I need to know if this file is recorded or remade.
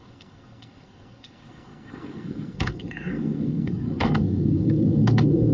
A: remade